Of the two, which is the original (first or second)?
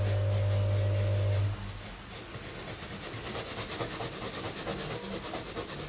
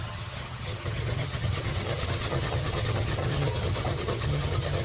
first